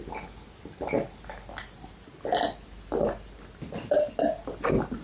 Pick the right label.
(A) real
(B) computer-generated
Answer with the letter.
A